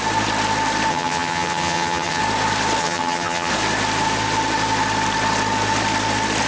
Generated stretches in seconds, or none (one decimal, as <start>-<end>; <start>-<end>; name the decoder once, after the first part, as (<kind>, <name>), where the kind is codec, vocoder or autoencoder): 0.9-2.2 (vocoder, HiFi-GAN); 2.8-3.5